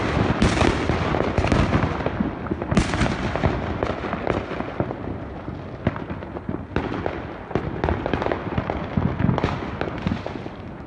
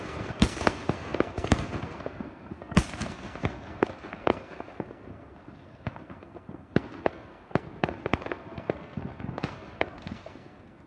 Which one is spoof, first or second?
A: second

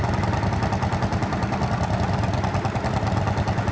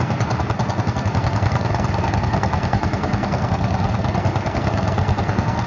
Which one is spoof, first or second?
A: second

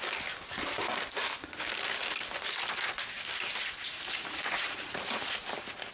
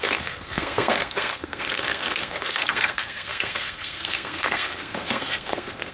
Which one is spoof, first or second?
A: second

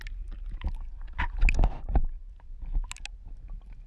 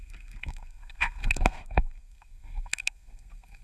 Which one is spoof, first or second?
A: second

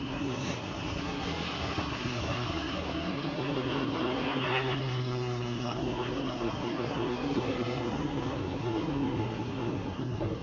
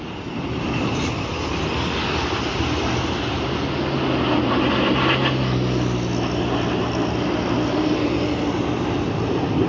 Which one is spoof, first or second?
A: first